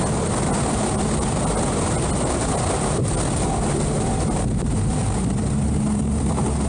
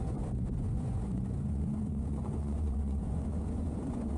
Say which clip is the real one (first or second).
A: first